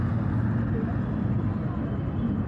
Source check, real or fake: real